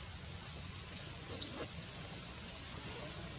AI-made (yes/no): yes